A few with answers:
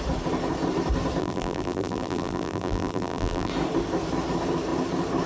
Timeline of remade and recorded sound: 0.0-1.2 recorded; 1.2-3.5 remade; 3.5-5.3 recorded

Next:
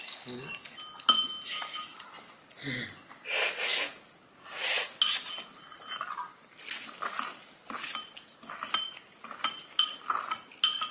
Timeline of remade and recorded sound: 0.0-10.9 recorded

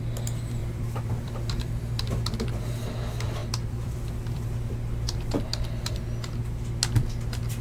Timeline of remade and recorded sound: 0.0-0.6 recorded; 0.6-1.5 remade; 1.5-3.4 recorded; 3.4-4.7 remade; 4.7-7.6 recorded